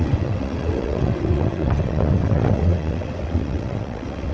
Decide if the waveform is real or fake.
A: fake